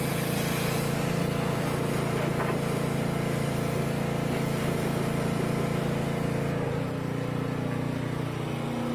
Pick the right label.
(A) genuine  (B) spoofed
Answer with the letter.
A